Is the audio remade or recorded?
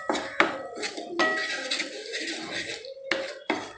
recorded